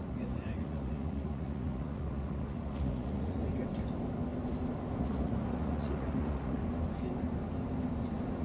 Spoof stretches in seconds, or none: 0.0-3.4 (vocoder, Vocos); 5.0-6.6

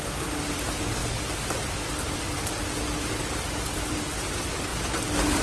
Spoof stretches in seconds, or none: none

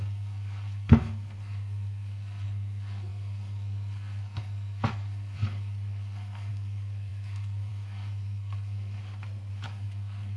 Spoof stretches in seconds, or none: 0.0-9.0 (codec, SNAC); 9.5-10.4

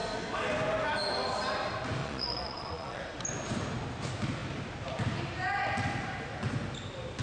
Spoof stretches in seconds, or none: 2.0-3.0 (vocoder, Vocos)

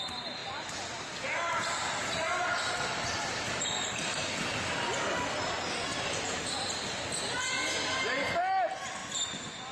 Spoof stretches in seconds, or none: 0.4-4.3 (vocoder, BigVGAN v2); 5.9-6.5

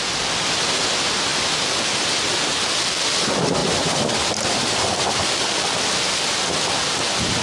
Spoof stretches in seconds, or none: none

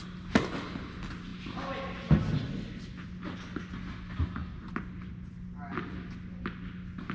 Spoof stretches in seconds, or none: none